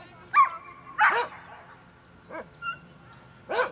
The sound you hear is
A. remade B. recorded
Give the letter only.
B